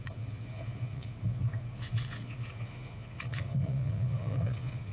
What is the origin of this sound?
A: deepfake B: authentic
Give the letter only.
A